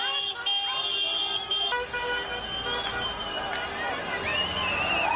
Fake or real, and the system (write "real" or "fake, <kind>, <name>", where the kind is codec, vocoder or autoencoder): real